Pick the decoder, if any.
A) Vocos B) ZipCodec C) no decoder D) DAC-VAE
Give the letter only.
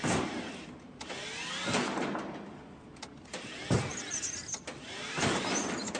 C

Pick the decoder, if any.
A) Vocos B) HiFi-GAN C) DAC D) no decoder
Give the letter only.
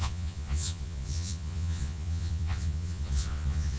A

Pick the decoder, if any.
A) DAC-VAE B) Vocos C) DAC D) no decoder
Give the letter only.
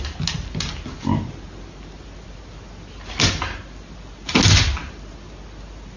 D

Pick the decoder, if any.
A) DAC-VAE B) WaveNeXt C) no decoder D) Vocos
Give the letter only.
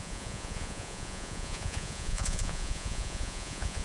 D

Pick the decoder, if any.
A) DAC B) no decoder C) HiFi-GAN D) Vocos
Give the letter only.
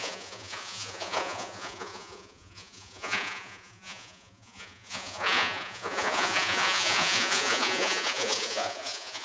D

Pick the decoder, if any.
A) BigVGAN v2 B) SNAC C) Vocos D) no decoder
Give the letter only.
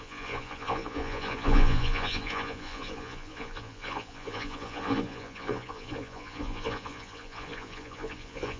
C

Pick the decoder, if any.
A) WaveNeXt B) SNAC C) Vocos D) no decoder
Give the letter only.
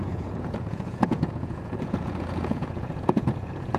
C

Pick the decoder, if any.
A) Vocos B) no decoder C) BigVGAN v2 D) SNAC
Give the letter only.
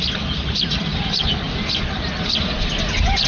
B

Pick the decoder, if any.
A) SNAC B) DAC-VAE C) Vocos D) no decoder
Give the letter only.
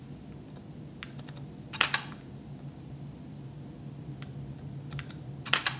D